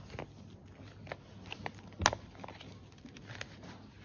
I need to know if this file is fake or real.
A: real